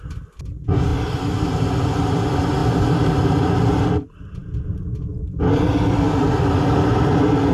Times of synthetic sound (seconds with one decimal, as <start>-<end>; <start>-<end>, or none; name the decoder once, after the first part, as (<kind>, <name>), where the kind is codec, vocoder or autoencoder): none